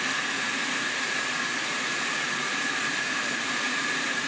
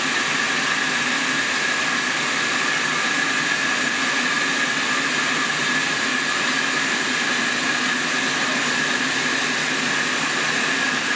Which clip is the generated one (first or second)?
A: first